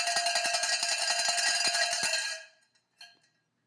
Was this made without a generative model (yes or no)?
yes